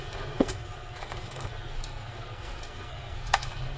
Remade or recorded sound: remade